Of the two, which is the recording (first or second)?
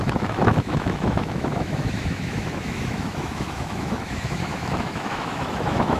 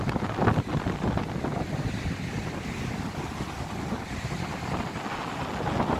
second